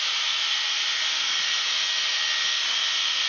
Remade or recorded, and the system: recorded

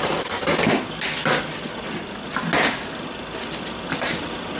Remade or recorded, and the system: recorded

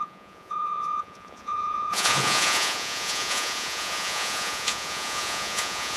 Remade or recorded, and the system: remade, vocoder, Vocos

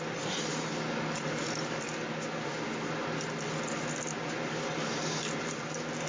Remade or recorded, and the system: recorded